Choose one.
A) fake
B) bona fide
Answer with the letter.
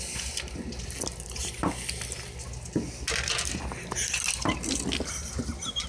B